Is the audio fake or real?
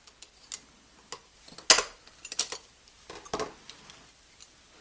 real